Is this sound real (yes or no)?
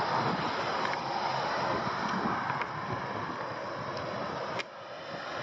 yes